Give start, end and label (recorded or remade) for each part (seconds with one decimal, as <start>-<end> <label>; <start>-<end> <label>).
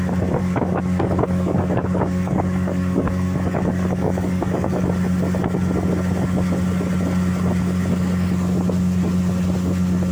0.0-0.4 recorded; 0.4-4.9 remade; 4.9-10.1 recorded